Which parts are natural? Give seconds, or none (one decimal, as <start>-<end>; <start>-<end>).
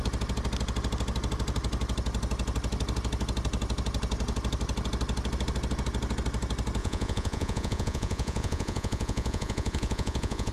0.0-6.8